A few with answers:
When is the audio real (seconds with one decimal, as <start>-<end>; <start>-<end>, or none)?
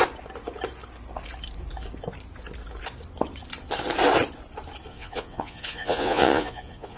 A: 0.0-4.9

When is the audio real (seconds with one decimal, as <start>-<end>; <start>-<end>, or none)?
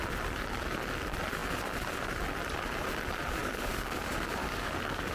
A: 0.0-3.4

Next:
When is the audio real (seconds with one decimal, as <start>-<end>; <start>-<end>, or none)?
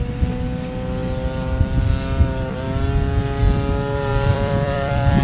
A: 0.0-4.1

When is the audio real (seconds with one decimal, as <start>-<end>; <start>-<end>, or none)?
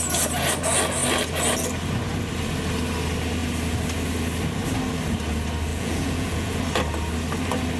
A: 0.0-5.7; 6.6-7.8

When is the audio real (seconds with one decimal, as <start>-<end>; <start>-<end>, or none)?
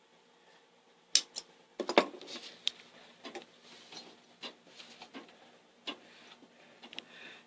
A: 0.0-7.5